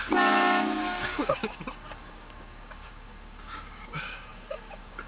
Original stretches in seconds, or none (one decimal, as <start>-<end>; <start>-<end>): none

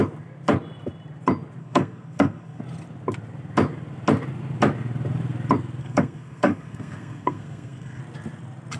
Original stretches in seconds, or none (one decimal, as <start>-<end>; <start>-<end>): 0.0-1.6; 2.6-5.8; 8.0-8.8

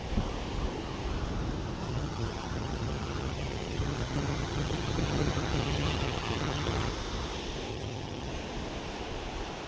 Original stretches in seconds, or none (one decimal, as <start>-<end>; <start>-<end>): 0.0-1.8; 6.9-7.7; 8.3-9.7

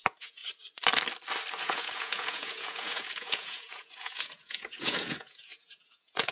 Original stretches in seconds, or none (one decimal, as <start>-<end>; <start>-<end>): 0.4-1.6

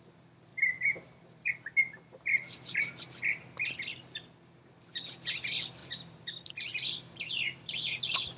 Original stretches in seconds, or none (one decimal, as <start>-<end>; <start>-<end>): 0.0-0.5; 1.5-5.8; 8.0-8.4

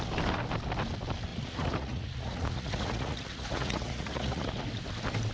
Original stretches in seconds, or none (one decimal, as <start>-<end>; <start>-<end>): 0.0-1.3; 4.5-5.3